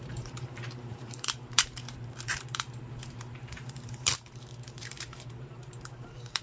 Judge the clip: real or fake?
fake